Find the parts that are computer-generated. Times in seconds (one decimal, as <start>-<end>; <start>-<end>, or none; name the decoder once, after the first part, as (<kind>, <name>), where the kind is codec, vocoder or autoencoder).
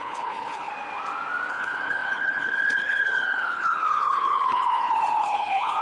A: 0.0-0.7 (codec, HILCodec); 1.5-5.8